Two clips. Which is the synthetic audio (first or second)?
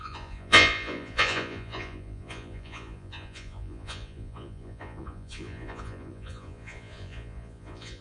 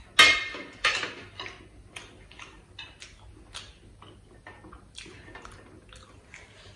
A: first